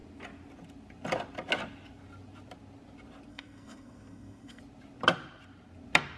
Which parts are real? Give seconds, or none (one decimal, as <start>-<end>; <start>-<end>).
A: 0.0-3.3; 4.6-6.2